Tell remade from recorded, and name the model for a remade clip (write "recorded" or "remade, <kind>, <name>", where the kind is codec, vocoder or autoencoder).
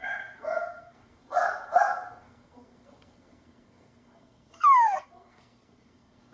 remade, codec, SNAC